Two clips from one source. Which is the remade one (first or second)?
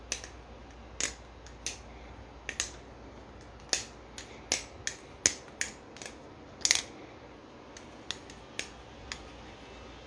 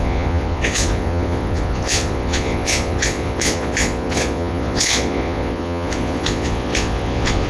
second